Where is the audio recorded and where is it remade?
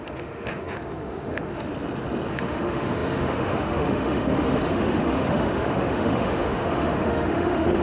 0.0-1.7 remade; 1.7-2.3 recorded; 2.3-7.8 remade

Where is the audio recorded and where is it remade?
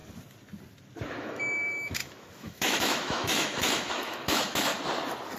0.0-1.2 recorded; 1.2-4.7 remade; 4.7-5.4 recorded